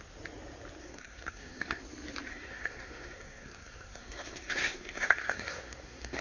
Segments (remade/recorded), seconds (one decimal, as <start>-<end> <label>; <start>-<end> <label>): 0.0-0.8 recorded; 0.8-1.8 remade; 1.8-2.3 recorded; 2.3-6.2 remade